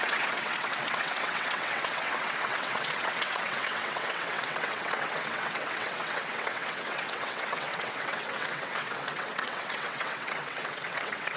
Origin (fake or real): fake